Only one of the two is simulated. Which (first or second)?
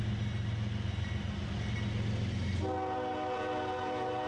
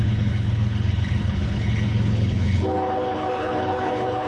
second